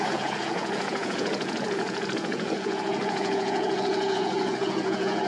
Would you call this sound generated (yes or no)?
yes